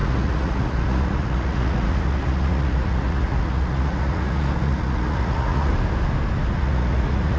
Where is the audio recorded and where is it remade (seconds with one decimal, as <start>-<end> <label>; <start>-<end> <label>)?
0.0-5.7 remade; 5.7-6.5 recorded; 6.5-7.4 remade